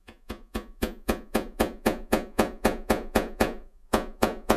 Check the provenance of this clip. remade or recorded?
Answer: remade